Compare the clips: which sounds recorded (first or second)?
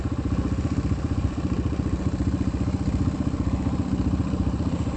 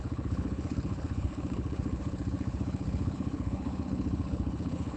first